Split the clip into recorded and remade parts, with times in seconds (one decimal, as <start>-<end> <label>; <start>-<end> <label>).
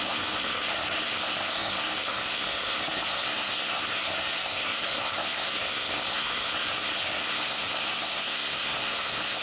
0.0-9.4 remade